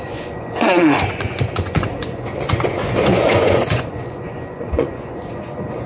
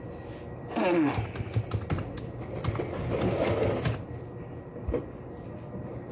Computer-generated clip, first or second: first